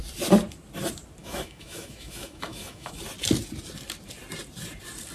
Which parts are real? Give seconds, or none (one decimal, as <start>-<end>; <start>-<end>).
0.0-1.2; 3.0-5.1